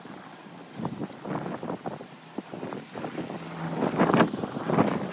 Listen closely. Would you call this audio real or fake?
real